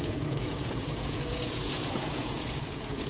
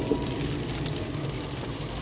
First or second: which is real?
second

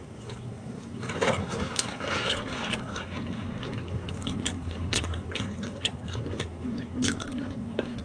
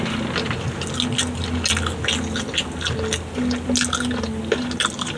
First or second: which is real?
second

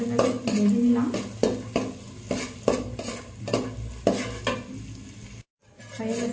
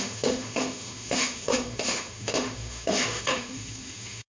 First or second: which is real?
first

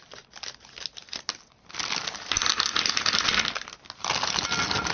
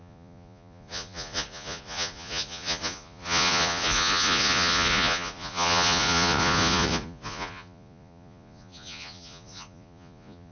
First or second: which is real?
first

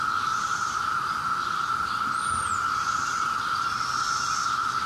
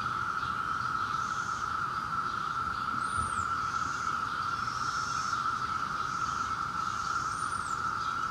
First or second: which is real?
first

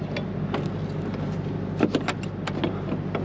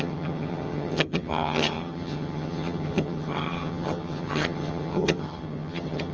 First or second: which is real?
first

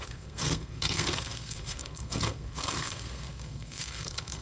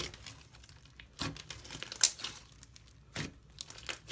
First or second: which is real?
second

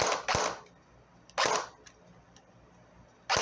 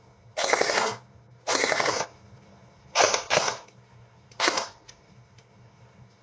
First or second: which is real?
first